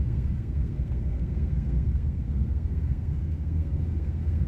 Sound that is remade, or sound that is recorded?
remade